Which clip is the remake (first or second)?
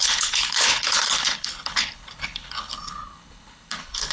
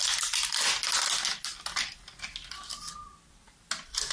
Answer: first